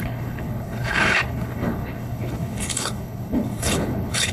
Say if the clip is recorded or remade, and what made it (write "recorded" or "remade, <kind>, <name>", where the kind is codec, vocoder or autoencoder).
remade, codec, HILCodec